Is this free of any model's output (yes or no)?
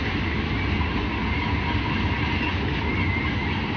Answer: yes